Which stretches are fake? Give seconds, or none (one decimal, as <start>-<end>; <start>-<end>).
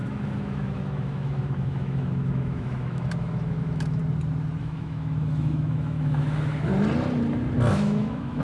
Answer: 0.0-4.0; 4.6-6.7; 7.7-8.4